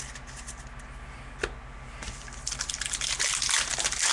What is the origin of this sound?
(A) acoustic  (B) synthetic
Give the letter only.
A